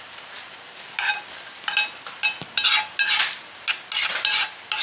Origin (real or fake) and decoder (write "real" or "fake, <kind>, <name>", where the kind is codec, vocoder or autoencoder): real